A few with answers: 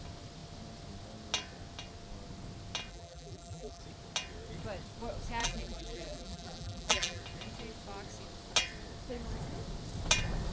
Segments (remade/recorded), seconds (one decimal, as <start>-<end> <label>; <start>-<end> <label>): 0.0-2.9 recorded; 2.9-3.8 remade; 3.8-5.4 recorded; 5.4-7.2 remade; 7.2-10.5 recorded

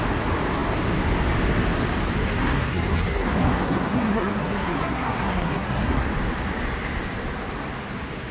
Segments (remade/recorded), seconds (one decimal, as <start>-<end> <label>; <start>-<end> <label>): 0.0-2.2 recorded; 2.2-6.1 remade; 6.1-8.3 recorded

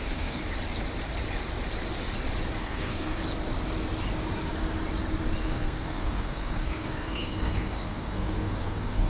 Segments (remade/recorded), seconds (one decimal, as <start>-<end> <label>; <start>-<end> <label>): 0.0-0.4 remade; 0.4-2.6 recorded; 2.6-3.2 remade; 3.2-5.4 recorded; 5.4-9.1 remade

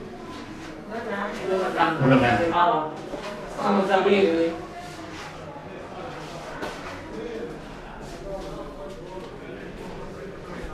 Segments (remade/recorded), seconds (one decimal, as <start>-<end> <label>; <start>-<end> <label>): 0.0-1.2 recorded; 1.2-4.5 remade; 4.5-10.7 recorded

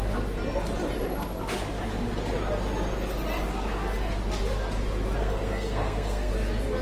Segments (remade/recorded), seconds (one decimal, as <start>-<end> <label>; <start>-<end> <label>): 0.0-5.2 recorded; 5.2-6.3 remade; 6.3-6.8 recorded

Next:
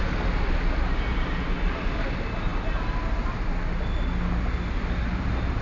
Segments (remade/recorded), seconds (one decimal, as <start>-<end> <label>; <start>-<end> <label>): 0.0-5.6 recorded

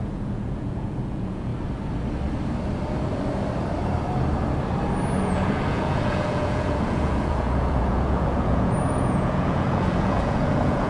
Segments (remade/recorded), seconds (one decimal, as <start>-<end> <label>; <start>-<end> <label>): 0.0-1.5 remade; 1.5-5.2 recorded; 5.2-10.9 remade